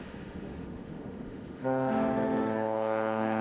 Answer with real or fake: fake